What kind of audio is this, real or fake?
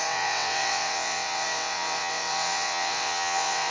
fake